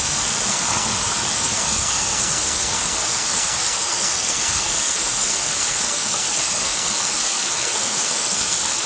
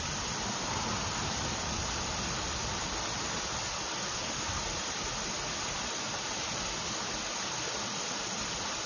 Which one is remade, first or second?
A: first